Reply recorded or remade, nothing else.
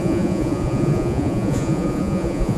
remade